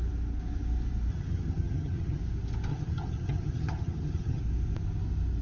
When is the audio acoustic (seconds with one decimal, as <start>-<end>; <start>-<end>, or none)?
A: 0.0-1.1; 2.2-2.7; 4.4-5.4